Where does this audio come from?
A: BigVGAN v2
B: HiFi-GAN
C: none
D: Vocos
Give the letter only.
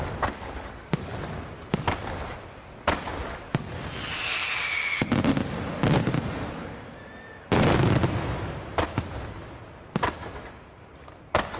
C